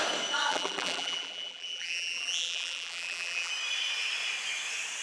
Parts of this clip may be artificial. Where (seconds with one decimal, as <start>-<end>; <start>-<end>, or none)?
0.5-3.5